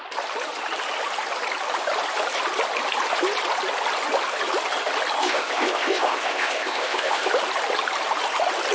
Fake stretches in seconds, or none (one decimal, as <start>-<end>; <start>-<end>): 5.2-7.3